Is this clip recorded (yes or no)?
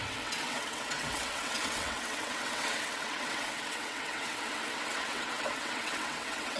no